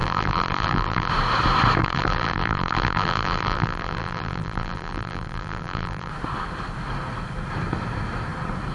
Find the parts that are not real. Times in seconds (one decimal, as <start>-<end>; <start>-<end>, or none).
0.0-1.1; 1.8-6.1